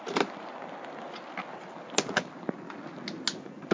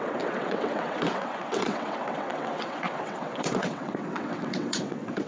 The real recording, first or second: first